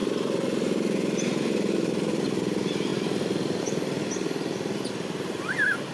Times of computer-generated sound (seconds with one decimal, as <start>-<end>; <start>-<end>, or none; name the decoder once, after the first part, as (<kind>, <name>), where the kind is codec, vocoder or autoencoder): none